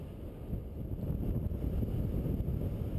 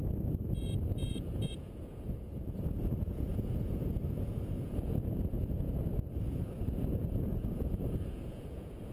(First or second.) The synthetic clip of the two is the second